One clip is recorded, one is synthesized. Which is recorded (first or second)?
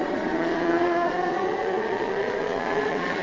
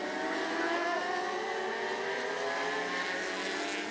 second